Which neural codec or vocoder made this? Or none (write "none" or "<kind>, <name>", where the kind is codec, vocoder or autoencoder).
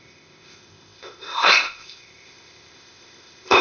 codec, ZipCodec